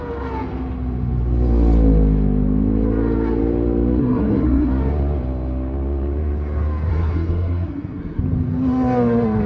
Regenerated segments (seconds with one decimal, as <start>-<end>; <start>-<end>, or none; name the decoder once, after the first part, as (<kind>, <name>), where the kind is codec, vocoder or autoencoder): 4.0-4.7 (codec, SNAC); 6.9-8.2